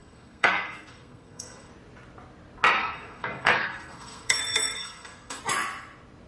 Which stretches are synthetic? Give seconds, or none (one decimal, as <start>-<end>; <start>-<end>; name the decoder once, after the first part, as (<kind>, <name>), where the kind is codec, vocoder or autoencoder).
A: 0.0-1.7 (codec, SNAC); 2.8-5.4